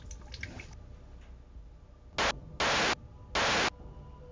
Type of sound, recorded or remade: recorded